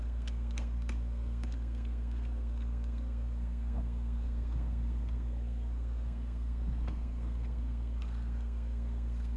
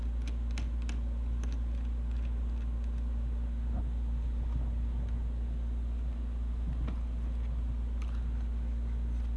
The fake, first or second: first